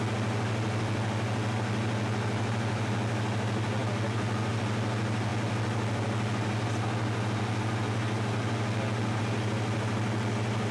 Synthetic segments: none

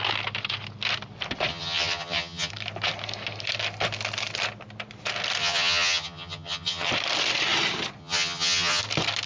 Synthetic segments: 1.5-2.5 (vocoder, HiFi-GAN); 5.4-6.9; 8.0-8.8